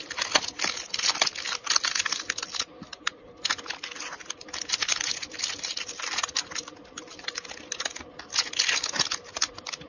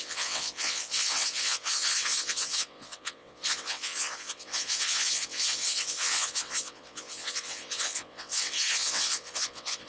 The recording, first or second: first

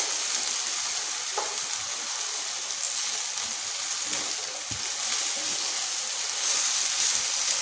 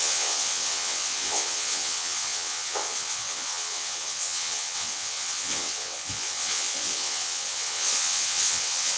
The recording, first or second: first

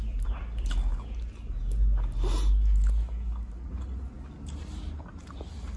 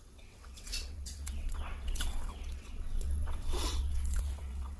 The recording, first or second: first